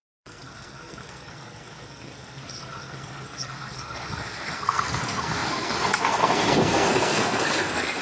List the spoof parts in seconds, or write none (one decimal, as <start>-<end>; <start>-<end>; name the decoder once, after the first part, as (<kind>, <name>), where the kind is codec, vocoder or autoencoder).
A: 0.0-8.0 (codec, SNAC)